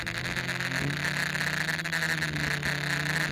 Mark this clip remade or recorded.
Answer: recorded